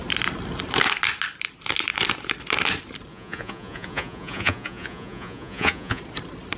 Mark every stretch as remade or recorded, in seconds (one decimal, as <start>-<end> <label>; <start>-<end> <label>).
0.0-3.1 recorded; 3.1-6.0 remade; 6.0-6.6 recorded